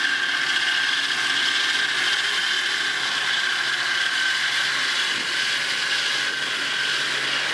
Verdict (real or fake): real